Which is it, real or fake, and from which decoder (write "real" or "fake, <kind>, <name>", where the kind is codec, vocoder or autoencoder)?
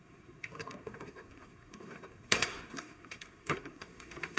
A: fake, codec, SNAC